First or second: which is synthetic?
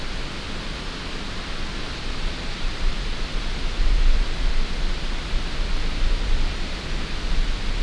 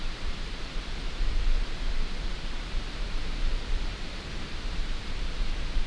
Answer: second